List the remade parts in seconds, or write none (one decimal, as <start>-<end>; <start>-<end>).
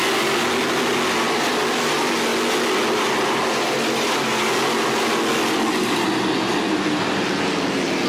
none